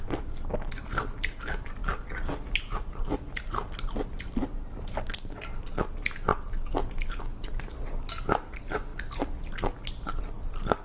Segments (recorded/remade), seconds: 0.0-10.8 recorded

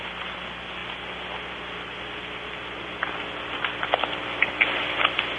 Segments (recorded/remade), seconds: 0.0-5.4 recorded

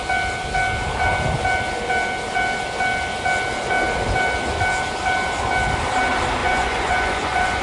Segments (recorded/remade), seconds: 0.0-6.4 recorded; 6.4-7.6 remade

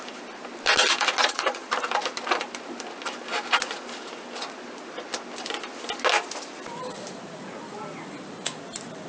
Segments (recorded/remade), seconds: 0.0-1.2 recorded; 1.2-1.7 remade; 1.7-9.1 recorded

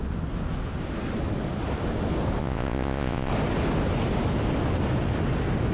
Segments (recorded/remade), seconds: 0.0-2.4 recorded; 2.4-3.3 remade; 3.3-5.7 recorded

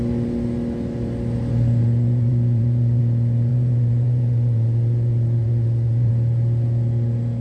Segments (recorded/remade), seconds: 0.0-1.8 recorded; 1.8-3.0 remade; 3.0-3.5 recorded; 3.5-6.1 remade; 6.1-7.4 recorded

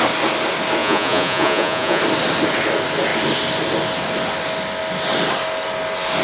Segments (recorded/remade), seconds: 0.0-0.8 recorded; 0.8-2.0 remade; 2.0-6.2 recorded

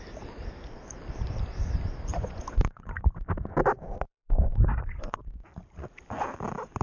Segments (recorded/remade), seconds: 0.0-2.1 recorded; 2.1-3.1 remade; 3.1-4.1 recorded; 4.1-5.2 remade; 5.2-6.8 recorded